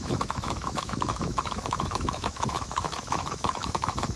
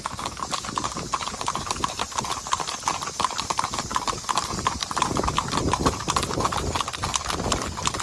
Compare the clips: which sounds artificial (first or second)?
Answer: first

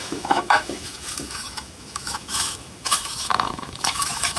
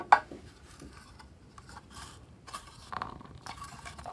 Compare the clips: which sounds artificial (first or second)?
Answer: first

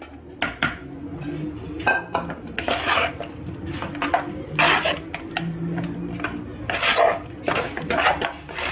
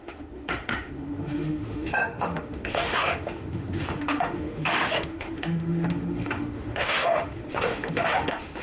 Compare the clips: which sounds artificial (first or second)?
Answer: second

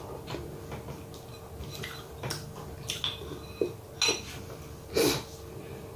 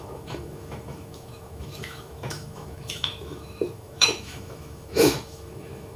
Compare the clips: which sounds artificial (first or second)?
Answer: second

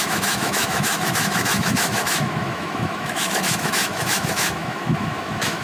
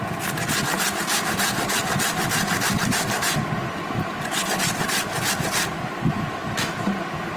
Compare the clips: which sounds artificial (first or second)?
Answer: first